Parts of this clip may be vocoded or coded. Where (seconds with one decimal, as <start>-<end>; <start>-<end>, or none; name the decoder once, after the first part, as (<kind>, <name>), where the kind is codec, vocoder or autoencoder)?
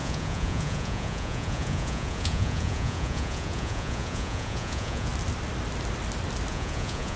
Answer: 0.0-5.1 (vocoder, Vocos); 6.5-7.2